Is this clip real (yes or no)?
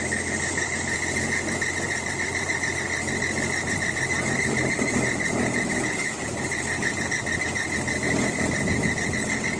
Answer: yes